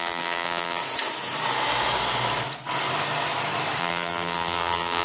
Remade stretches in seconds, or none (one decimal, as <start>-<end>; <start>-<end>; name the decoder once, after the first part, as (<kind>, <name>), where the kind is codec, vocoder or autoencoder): 0.0-0.8 (vocoder, BigVGAN v2); 3.8-5.0